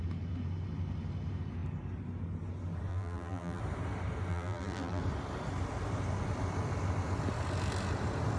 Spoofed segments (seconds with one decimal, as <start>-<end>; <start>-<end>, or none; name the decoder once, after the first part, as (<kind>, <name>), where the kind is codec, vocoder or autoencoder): 2.9-3.6 (vocoder, BigVGAN v2); 4.3-5.0

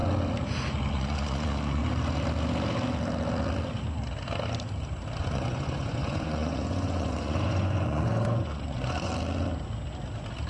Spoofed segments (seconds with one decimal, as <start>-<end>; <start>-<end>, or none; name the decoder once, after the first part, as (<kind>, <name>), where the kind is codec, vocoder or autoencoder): 0.9-1.8 (vocoder, Vocos); 5.2-9.1